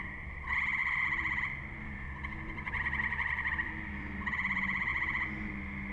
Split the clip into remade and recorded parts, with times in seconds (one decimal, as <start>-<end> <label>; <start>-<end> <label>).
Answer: 0.0-4.9 remade; 4.9-5.9 recorded